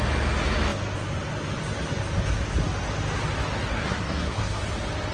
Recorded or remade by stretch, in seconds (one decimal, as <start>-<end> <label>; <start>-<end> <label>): 0.0-3.7 recorded; 3.7-4.6 remade; 4.6-5.1 recorded